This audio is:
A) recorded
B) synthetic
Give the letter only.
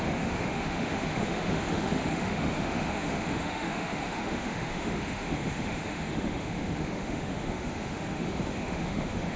B